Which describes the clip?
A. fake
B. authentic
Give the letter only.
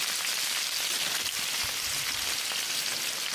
B